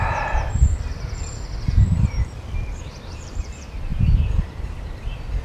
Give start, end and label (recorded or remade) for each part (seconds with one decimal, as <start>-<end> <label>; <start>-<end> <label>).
0.0-0.6 remade; 0.6-3.1 recorded; 3.1-5.4 remade

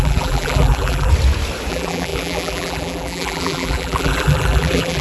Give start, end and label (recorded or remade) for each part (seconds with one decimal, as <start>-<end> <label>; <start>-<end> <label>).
0.0-1.1 remade; 1.1-1.7 recorded; 1.7-5.0 remade

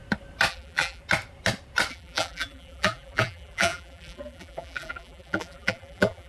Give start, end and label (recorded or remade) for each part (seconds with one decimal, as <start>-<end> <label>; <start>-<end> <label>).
0.0-0.5 recorded; 0.5-1.0 remade; 1.0-1.9 recorded; 1.9-6.3 remade